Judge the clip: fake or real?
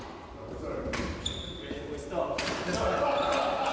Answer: real